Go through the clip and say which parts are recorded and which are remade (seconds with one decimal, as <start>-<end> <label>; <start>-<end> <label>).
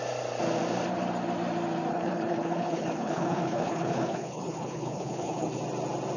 0.0-1.9 recorded; 1.9-5.6 remade; 5.6-6.2 recorded